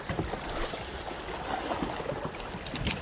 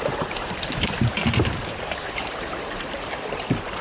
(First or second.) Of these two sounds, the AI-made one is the second